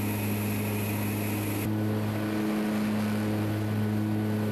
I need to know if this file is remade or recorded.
recorded